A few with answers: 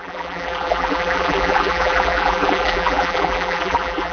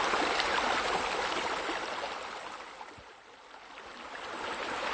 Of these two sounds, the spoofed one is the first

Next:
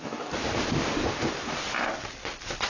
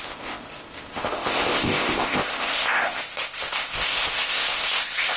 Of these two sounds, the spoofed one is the second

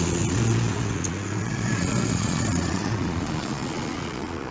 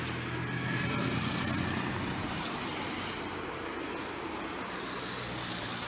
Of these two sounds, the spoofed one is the first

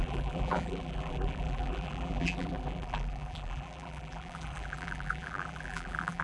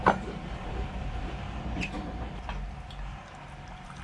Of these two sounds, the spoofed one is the first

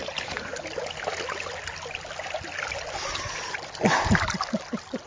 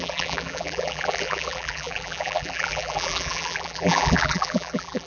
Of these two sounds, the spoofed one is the second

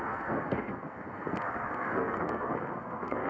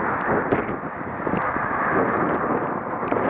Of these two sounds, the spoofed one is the first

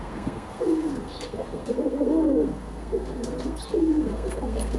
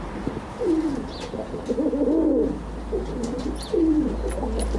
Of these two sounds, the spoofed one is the first